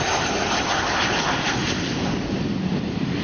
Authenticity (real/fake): real